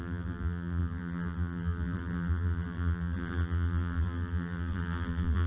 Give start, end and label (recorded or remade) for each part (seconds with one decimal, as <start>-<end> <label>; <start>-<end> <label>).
0.0-5.5 remade